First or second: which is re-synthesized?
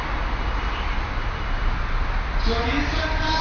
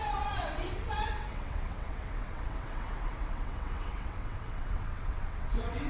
second